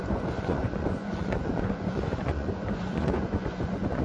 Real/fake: fake